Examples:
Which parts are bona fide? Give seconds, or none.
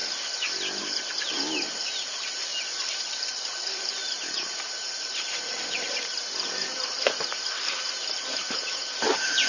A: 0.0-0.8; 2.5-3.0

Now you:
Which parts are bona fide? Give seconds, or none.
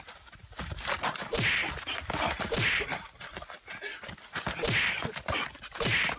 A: 0.0-6.2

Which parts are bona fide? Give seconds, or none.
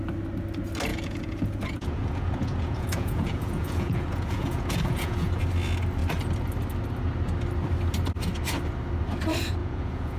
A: 0.0-0.9; 5.4-9.6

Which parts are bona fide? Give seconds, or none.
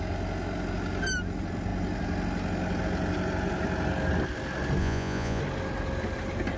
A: 0.0-4.8; 5.4-6.6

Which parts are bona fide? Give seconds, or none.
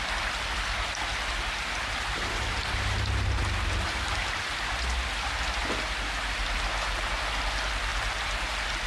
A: 0.0-8.9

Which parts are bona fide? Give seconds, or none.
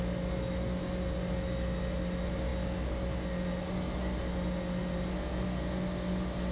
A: 0.0-6.5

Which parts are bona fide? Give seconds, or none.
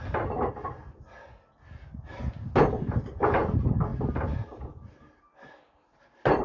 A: 0.0-6.4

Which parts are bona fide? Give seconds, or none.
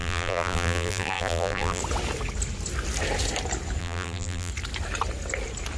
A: 1.8-3.8; 4.5-5.8